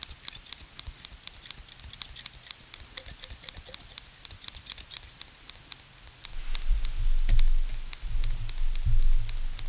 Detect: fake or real real